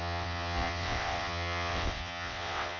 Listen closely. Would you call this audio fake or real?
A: fake